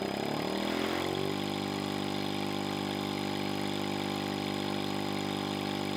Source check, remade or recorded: recorded